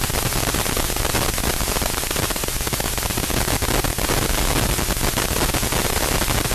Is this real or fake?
real